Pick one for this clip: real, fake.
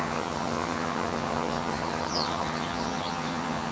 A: fake